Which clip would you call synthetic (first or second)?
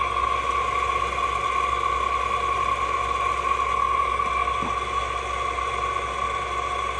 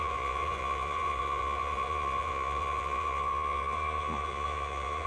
second